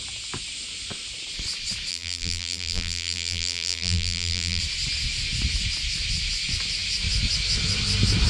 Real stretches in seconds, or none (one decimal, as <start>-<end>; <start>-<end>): 0.0-1.9; 4.6-8.3

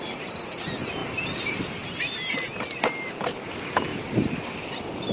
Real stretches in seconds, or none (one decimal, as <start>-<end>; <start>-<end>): 0.0-5.1

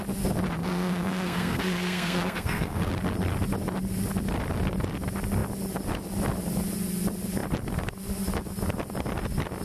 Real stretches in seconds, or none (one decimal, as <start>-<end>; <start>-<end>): 0.0-0.6; 2.9-9.6

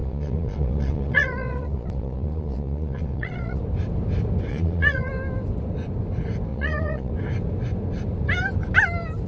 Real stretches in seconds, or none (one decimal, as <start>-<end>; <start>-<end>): 3.6-4.5; 5.1-6.5; 7.1-9.3

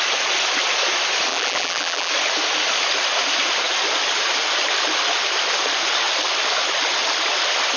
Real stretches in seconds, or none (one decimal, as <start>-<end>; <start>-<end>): 0.0-1.3; 2.1-7.8

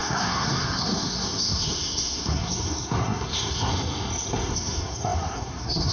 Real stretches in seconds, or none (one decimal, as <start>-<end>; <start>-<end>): 3.7-4.3

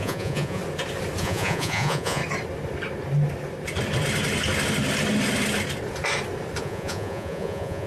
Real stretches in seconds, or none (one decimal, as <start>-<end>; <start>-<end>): 0.6-1.2; 2.2-6.6

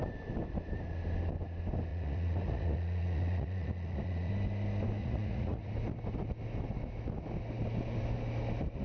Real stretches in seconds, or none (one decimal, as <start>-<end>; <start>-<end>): 0.0-1.9; 4.3-5.0; 5.7-8.8